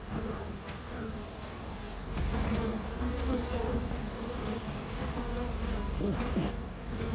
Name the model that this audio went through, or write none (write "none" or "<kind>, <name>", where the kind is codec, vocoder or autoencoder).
codec, DAC